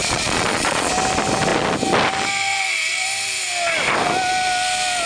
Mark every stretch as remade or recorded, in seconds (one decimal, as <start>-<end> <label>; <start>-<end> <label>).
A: 0.0-0.9 remade; 0.9-5.1 recorded